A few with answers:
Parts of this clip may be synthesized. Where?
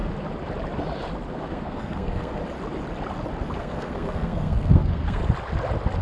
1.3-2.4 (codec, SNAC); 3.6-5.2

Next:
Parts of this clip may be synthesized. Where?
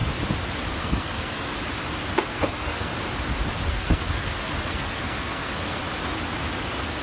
0.8-1.5 (codec, SNAC); 2.1-2.9; 3.7-5.8; 6.6-7.0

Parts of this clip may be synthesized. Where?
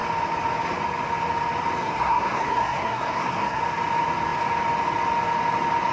1.8-3.6 (codec, SNAC)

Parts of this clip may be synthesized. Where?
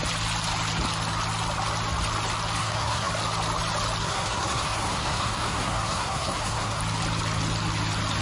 2.6-3.1 (codec, SNAC); 4.0-6.8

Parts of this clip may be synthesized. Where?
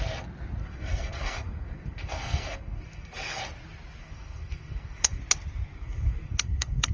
0.6-3.4 (codec, SNAC); 4.0-5.2; 5.7-6.9